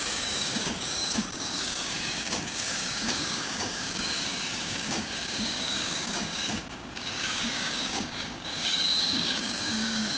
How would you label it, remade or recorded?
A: remade